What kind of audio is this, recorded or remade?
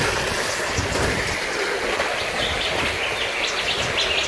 recorded